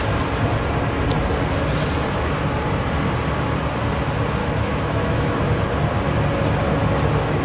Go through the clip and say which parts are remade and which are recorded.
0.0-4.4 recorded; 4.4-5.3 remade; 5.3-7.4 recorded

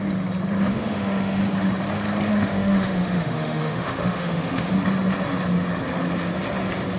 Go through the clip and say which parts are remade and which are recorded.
0.0-0.7 recorded; 0.7-1.4 remade; 1.4-2.3 recorded; 2.3-4.7 remade; 4.7-7.0 recorded

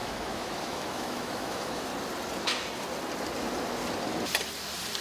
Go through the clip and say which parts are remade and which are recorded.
0.0-1.9 remade; 1.9-5.0 recorded

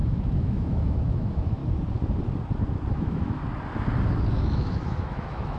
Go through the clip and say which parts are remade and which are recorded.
0.0-1.6 remade; 1.6-2.9 recorded; 2.9-3.4 remade; 3.4-4.3 recorded; 4.3-5.6 remade